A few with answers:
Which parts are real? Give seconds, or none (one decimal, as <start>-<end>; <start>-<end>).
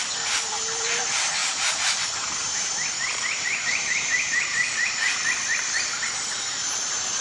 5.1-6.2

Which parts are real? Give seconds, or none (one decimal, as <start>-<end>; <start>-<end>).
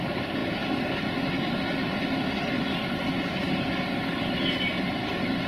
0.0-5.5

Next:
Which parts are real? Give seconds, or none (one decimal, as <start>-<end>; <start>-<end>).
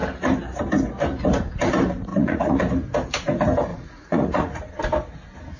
0.0-2.1; 2.6-3.7; 4.7-5.6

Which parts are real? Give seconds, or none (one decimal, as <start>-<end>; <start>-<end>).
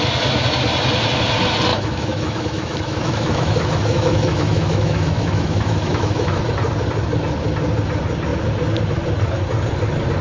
0.0-1.7; 6.4-10.2